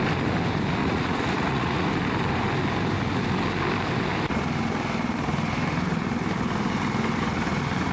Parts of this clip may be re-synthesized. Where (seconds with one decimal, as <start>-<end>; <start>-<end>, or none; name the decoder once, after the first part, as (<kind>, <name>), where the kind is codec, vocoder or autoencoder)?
0.8-1.9 (vocoder, Vocos)